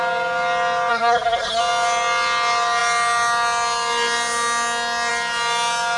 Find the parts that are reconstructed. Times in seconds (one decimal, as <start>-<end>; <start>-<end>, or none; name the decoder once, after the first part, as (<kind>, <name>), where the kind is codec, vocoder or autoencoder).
0.9-1.6 (codec, SNAC)